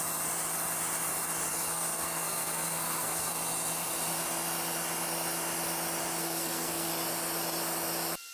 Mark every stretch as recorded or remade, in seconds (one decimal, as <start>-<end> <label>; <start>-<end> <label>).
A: 0.0-1.5 recorded; 1.5-3.3 remade; 3.3-6.2 recorded; 6.2-6.9 remade; 6.9-8.3 recorded